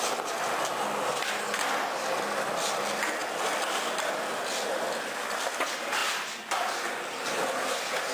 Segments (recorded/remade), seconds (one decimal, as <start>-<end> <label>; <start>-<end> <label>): 0.0-8.1 recorded